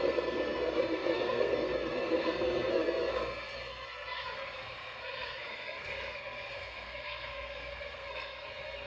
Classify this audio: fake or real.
fake